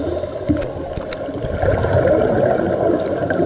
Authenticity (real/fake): real